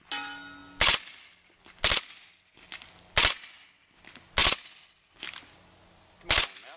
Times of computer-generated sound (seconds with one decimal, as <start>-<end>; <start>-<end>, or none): none